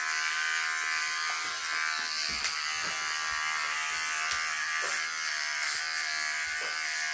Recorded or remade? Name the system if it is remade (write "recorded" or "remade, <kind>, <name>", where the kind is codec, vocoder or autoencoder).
recorded